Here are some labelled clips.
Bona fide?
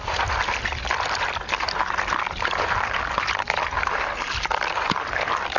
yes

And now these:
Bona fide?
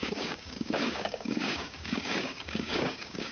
no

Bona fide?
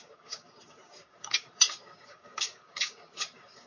no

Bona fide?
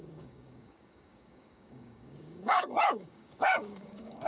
no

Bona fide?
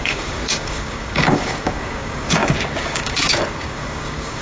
no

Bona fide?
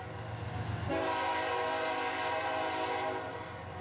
yes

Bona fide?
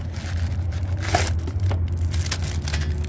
yes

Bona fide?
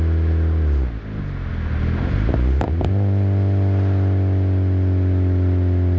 yes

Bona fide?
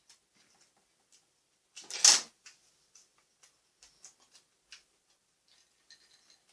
yes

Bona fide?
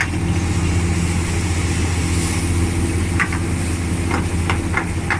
yes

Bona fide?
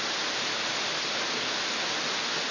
yes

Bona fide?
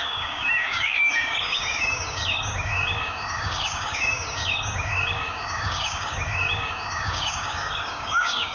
no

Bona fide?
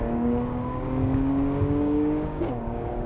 no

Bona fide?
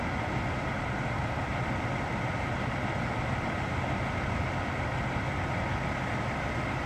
yes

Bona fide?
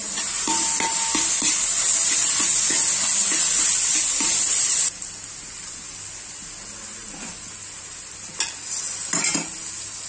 yes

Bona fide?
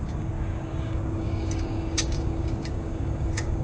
no